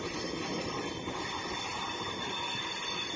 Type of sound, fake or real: real